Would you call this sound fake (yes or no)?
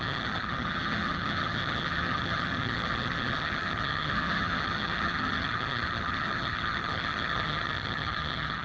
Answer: yes